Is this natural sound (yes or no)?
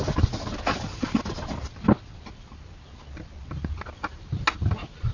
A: yes